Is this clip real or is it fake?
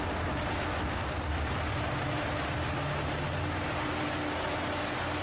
real